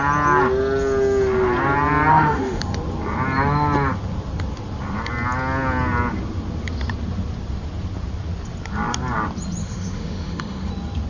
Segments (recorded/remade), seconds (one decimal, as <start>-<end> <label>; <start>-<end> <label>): 0.0-2.1 recorded; 2.1-2.6 remade; 2.6-9.6 recorded; 9.6-10.7 remade; 10.7-11.1 recorded